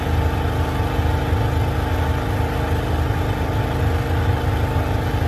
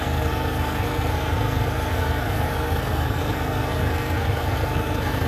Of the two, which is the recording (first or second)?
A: first